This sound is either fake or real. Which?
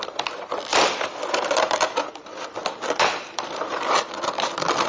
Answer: fake